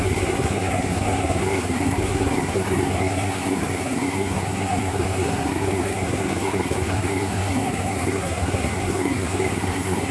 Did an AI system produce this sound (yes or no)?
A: yes